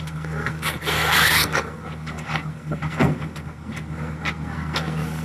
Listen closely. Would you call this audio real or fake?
fake